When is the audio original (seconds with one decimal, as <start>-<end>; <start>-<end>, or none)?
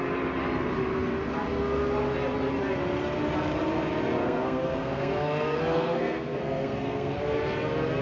0.0-4.2; 7.2-8.0